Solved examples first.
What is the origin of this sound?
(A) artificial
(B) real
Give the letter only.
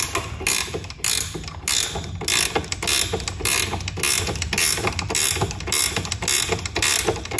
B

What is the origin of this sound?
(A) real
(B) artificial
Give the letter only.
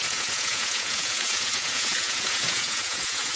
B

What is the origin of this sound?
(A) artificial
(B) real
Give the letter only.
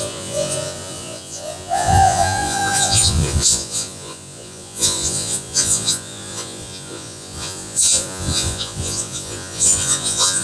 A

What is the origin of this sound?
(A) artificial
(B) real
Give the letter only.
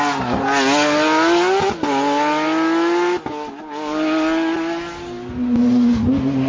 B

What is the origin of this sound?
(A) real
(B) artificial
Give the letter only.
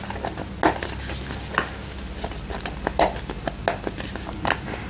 A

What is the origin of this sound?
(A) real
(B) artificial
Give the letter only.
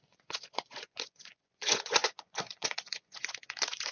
B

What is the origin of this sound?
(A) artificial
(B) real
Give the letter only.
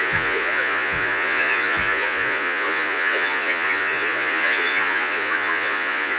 A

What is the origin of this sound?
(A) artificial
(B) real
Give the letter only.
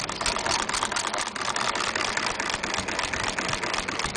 B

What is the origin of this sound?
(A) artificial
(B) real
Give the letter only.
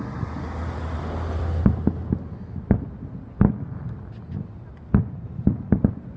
B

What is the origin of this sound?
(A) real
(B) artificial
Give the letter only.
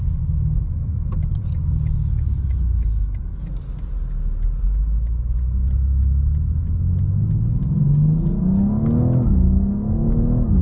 A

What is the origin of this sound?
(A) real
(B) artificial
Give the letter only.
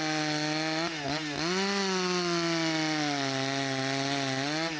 A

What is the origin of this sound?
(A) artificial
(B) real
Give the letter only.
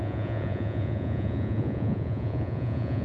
A